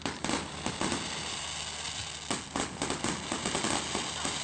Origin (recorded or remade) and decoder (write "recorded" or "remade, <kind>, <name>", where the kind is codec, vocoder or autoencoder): recorded